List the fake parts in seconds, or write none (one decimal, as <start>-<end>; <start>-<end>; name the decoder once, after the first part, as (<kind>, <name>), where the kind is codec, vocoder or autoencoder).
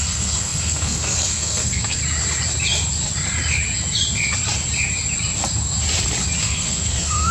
0.0-2.0 (codec, SNAC); 6.4-7.3